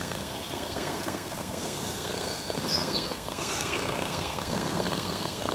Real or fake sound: fake